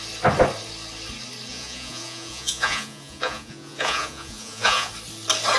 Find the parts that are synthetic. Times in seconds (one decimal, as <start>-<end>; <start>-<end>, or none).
1.5-4.9